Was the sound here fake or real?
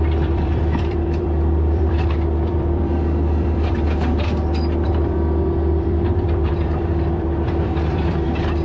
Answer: fake